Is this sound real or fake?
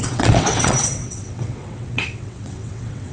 fake